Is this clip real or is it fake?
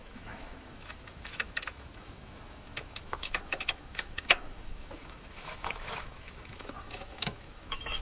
fake